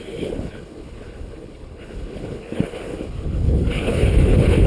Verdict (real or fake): fake